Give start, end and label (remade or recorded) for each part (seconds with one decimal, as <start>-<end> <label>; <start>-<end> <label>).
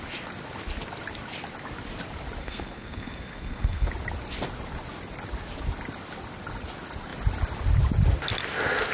0.0-2.4 recorded; 2.4-3.9 remade; 3.9-8.9 recorded